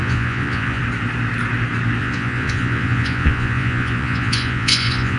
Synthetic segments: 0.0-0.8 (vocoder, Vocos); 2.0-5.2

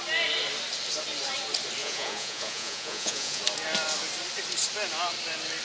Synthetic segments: 1.8-3.4 (vocoder, Vocos)

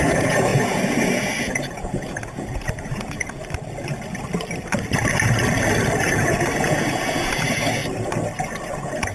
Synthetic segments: 0.0-3.4 (vocoder, Vocos); 6.0-7.8; 8.4-9.1

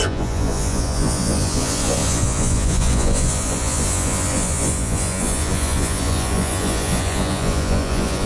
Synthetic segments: 0.0-8.3 (vocoder, Vocos)

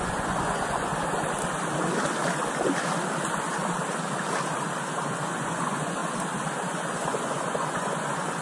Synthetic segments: 0.0-0.9 (vocoder, Vocos); 5.1-6.0; 6.7-8.4

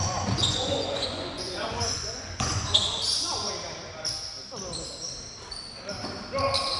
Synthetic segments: 0.0-3.5 (vocoder, Vocos)

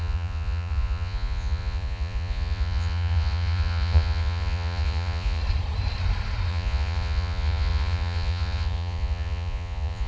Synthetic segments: 0.0-5.4 (vocoder, Vocos); 6.5-10.1

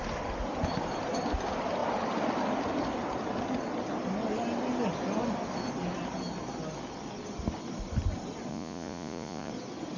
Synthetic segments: 8.5-9.5 (vocoder, Vocos)